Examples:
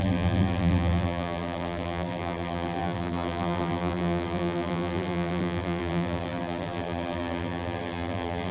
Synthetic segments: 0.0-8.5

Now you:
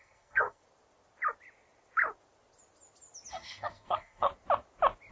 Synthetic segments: 0.0-0.6; 3.3-4.3

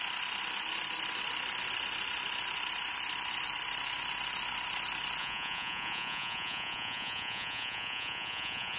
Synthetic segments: 5.2-8.8

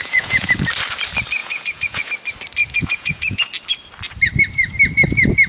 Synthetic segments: 0.0-0.5; 1.4-2.1; 2.6-3.4